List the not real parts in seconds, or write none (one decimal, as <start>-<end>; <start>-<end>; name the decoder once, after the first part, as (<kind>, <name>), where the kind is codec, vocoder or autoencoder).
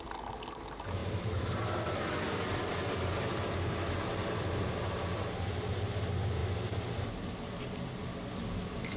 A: none